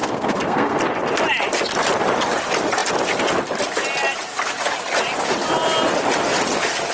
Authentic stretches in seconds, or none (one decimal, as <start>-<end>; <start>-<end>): 0.8-6.9